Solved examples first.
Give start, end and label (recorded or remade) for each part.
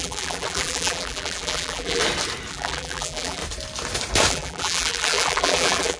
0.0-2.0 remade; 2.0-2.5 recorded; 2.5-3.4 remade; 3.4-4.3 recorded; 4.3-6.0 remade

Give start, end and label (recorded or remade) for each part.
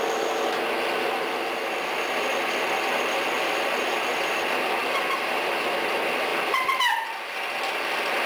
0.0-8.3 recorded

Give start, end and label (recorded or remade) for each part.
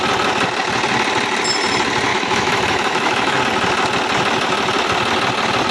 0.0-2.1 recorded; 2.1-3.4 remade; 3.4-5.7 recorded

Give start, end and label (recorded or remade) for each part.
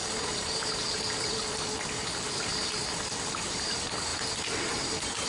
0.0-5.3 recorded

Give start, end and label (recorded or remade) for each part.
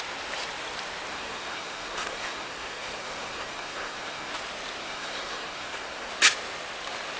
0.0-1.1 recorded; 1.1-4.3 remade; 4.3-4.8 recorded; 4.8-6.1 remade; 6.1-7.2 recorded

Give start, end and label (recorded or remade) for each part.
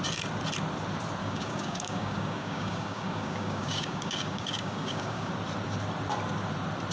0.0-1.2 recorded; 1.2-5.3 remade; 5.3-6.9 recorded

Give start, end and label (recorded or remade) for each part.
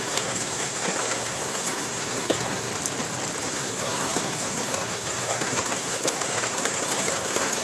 0.0-2.7 remade; 2.7-3.4 recorded; 3.4-7.6 remade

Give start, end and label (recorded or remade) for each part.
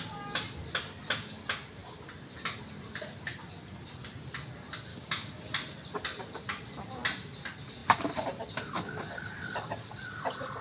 0.0-4.9 recorded; 4.9-5.4 remade; 5.4-10.6 recorded